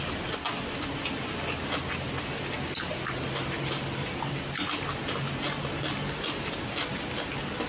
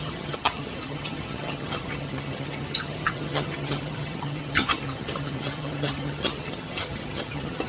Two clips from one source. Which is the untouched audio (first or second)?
first